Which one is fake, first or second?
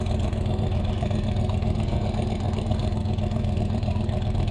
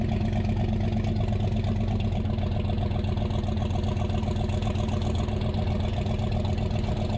first